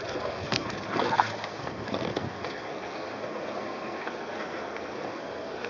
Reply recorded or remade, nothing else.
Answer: remade